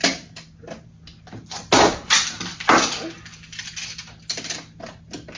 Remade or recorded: recorded